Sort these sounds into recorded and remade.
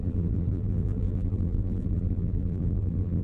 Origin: remade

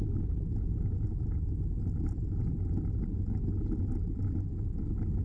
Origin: recorded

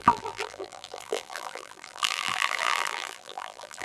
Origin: remade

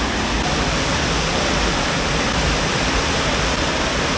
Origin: recorded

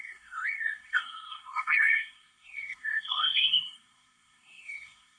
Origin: remade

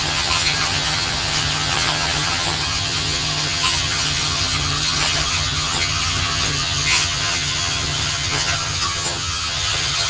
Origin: remade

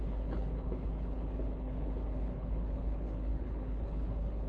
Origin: remade